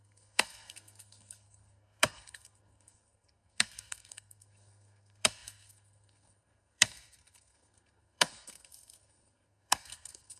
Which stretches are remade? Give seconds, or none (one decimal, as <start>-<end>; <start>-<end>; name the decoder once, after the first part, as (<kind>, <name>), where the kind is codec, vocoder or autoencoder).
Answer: 0.0-10.4 (codec, SNAC)